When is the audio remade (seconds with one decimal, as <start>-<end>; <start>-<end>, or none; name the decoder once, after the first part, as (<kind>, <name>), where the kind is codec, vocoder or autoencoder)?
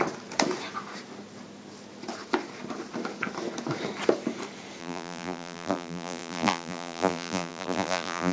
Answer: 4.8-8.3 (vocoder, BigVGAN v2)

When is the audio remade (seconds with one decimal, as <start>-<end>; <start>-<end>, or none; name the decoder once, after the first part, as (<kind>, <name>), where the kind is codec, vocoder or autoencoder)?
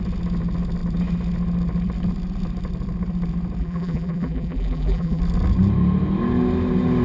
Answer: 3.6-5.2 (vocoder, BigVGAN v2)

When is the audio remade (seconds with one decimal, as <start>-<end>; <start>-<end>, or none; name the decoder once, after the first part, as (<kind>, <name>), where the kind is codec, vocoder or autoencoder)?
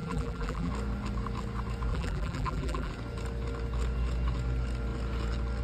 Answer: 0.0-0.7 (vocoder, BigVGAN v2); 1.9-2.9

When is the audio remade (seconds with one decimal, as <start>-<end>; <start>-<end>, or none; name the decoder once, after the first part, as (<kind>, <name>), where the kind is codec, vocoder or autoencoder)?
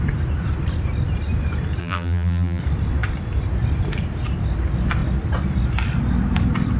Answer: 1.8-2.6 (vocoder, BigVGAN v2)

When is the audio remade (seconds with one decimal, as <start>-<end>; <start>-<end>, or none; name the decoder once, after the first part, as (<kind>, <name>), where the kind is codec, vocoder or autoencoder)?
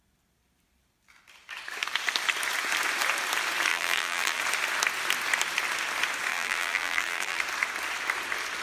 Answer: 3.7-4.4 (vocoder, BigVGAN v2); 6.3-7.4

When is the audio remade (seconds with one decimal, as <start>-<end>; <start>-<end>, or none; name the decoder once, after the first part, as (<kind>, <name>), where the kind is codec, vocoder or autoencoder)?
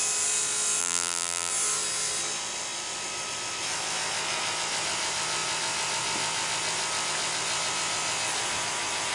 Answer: 0.8-1.5 (vocoder, BigVGAN v2)